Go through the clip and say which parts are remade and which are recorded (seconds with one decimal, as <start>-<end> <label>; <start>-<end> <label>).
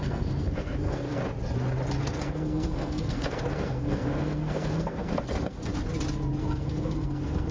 0.0-1.2 remade; 1.2-2.0 recorded; 2.0-5.7 remade; 5.7-6.4 recorded; 6.4-7.5 remade